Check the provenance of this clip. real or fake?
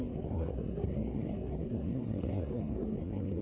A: fake